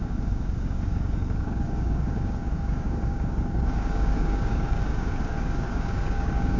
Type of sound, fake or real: fake